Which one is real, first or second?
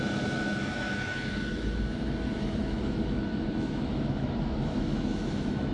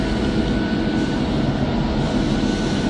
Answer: second